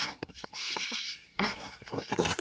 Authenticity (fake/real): fake